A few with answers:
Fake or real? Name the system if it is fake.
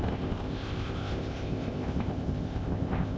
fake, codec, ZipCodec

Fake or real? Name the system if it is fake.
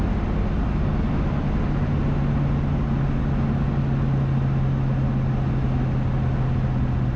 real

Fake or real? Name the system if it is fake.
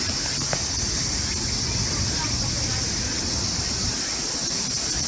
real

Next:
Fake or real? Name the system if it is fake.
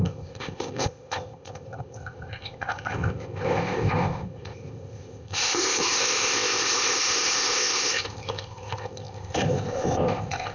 fake, codec, ZipCodec